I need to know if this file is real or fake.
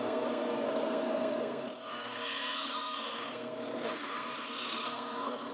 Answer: fake